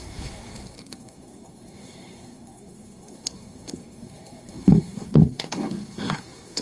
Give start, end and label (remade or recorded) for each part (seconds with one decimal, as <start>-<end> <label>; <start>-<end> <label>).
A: 0.0-6.6 remade